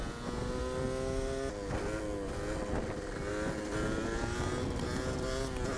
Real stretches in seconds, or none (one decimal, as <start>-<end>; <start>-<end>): 0.0-5.8